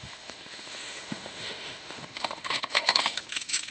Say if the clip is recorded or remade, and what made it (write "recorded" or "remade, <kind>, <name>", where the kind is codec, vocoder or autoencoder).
remade, autoencoder, DAC-VAE